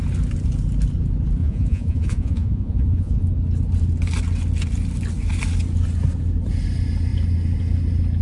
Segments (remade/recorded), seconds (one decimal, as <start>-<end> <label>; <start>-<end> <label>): 0.0-1.4 recorded; 1.4-3.3 remade; 3.3-8.2 recorded